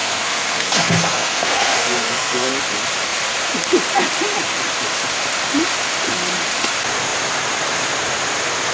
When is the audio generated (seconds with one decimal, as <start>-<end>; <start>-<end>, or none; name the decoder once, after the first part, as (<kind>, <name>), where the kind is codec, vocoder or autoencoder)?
0.0-2.5 (codec, SNAC)